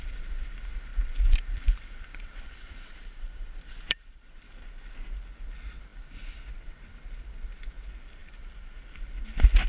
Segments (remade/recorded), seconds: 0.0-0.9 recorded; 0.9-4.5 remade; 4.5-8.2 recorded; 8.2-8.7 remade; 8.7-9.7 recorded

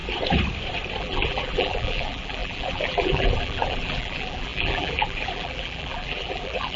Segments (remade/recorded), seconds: 0.0-1.0 recorded; 1.0-6.8 remade

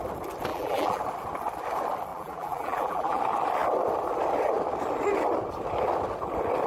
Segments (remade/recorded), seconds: 0.0-0.5 recorded; 0.5-1.0 remade; 1.0-2.1 recorded; 2.1-3.2 remade; 3.2-6.7 recorded